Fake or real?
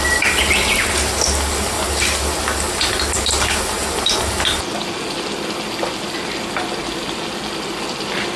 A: real